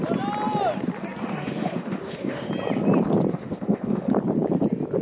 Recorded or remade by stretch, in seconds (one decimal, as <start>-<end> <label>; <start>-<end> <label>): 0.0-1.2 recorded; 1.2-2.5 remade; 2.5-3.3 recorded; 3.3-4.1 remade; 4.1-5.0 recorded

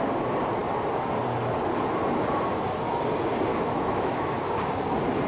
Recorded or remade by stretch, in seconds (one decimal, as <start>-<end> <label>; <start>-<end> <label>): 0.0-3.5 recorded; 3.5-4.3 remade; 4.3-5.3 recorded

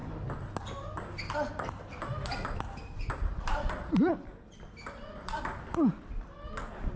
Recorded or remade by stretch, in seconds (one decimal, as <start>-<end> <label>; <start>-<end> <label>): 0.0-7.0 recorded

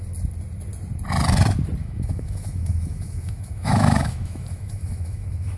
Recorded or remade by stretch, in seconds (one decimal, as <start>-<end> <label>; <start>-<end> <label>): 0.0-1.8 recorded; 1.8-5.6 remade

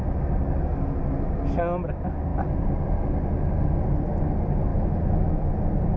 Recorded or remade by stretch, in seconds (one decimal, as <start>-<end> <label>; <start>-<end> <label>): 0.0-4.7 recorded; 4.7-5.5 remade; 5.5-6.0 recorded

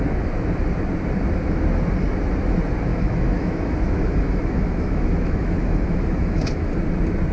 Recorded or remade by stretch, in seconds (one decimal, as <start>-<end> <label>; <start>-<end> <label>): 0.0-2.9 recorded; 2.9-6.7 remade; 6.7-7.3 recorded